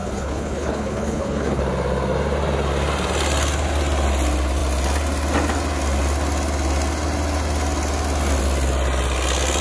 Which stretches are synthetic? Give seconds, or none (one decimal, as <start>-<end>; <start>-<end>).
0.0-1.6